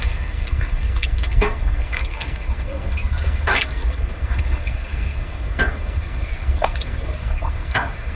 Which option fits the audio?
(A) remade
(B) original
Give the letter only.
A